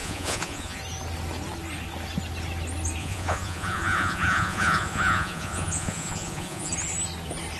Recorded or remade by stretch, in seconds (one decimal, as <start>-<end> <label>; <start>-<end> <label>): 0.0-0.8 remade; 0.8-3.0 recorded; 3.0-6.7 remade; 6.7-7.6 recorded